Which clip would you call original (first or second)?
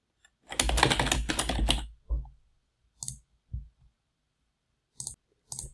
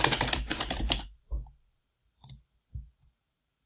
first